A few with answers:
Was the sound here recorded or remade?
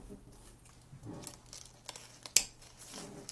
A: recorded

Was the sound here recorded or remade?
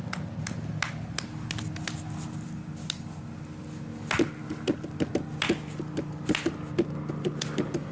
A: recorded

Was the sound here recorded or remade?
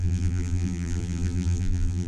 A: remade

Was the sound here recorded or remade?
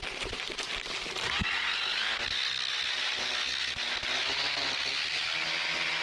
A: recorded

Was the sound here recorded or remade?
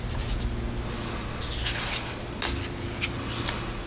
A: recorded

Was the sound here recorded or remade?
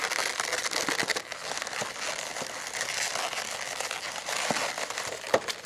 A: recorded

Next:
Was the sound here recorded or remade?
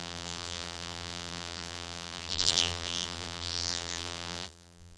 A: remade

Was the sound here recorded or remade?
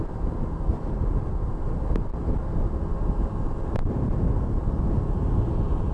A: recorded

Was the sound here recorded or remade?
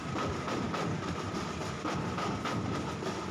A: remade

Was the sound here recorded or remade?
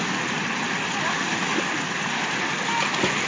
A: recorded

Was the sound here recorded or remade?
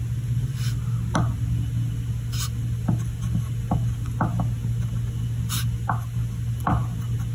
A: recorded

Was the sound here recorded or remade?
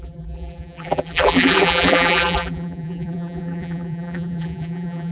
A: remade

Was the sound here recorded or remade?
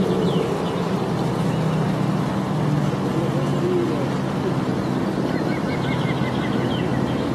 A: recorded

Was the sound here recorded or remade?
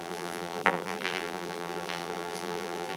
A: remade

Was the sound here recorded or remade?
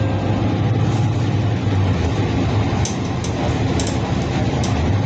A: recorded